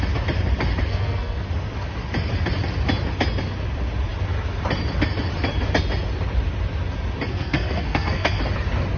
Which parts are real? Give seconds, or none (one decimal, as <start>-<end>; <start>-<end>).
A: 0.0-0.9; 1.5-7.3; 8.4-9.0